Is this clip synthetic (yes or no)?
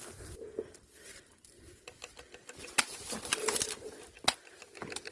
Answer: no